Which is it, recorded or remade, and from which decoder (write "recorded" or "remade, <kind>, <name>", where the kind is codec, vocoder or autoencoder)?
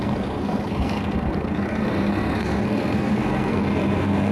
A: remade, codec, SNAC